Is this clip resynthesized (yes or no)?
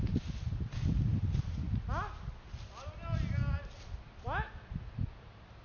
no